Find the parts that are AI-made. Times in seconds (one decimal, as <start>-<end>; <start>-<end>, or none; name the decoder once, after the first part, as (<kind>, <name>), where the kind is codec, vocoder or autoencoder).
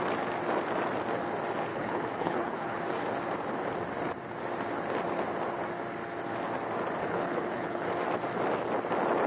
1.7-2.8 (codec, HILCodec); 7.0-7.9